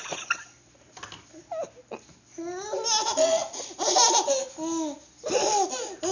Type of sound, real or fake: real